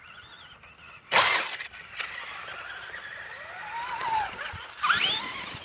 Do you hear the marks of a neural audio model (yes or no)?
no